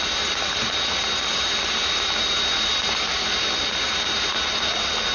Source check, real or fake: real